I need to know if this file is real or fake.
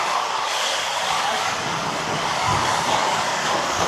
fake